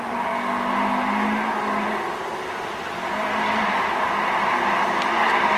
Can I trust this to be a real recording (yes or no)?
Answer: yes